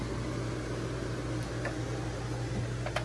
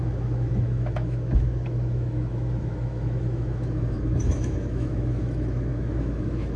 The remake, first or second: second